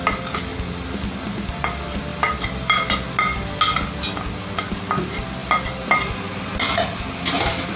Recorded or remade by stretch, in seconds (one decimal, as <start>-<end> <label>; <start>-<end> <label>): 0.0-7.8 recorded

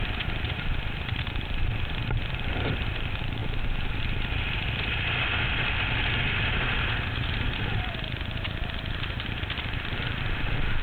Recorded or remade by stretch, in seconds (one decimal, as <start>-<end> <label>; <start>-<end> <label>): 0.0-3.4 remade; 3.4-7.6 recorded; 7.6-10.8 remade

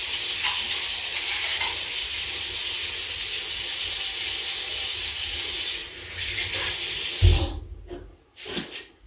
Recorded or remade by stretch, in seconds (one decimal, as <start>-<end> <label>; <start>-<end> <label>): 0.0-5.8 recorded; 5.8-7.1 remade; 7.1-9.1 recorded

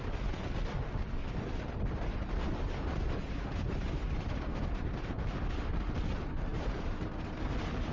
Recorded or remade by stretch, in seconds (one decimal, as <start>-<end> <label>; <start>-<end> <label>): 0.0-1.2 recorded; 1.2-5.0 remade; 5.0-6.5 recorded; 6.5-7.9 remade

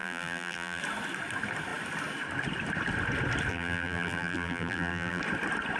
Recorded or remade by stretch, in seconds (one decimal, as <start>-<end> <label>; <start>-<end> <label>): 0.0-0.8 remade; 0.8-3.5 recorded; 3.5-5.2 remade; 5.2-5.8 recorded

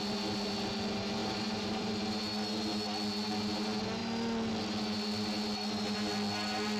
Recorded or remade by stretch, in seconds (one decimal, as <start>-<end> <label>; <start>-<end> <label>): 0.0-1.2 recorded; 1.2-1.9 remade; 1.9-6.8 recorded

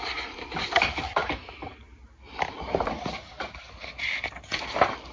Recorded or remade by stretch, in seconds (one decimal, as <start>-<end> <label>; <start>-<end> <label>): 0.0-1.4 remade; 1.4-4.5 recorded; 4.5-5.1 remade

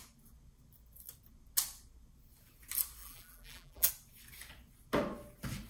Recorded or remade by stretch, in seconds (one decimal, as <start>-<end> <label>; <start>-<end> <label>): 0.0-3.0 recorded; 3.0-3.9 remade; 3.9-5.7 recorded